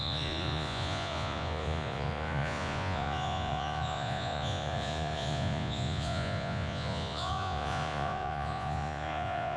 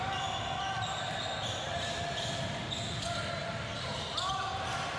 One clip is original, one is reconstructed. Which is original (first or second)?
second